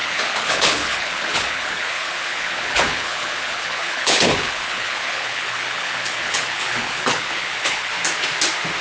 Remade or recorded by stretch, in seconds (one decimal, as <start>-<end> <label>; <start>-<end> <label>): 0.0-7.9 remade; 7.9-8.8 recorded